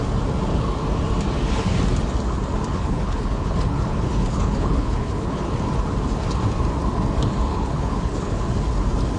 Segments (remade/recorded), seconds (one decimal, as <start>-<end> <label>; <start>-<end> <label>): 0.0-2.7 recorded; 2.7-5.5 remade; 5.5-7.5 recorded; 7.5-8.4 remade; 8.4-9.2 recorded